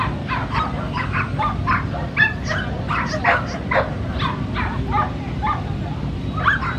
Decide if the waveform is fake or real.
real